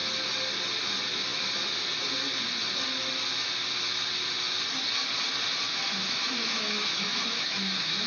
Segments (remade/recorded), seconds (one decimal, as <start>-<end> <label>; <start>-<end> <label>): 0.0-5.7 recorded; 5.7-8.1 remade